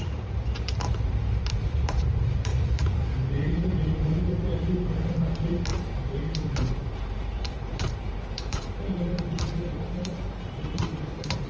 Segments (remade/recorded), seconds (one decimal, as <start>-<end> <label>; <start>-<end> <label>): 0.0-11.5 remade